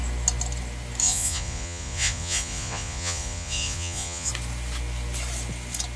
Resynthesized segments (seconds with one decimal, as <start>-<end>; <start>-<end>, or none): 1.0-4.3